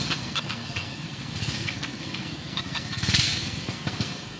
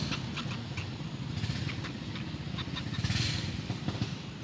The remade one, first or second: first